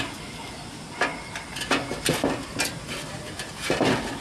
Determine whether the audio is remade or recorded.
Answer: recorded